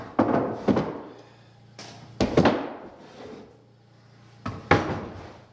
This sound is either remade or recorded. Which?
recorded